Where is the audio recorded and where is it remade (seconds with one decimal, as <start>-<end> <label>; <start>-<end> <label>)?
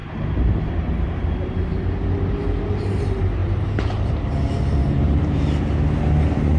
0.0-4.8 recorded; 4.8-5.6 remade; 5.6-6.6 recorded